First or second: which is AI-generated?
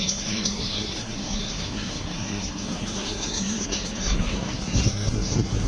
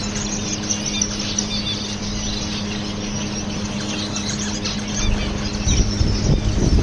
first